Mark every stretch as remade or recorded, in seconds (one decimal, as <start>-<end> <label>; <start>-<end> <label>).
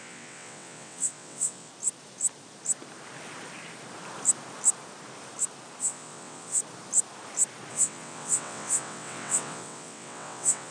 0.0-1.7 remade; 1.7-5.8 recorded; 5.8-6.6 remade; 6.6-7.7 recorded; 7.7-10.7 remade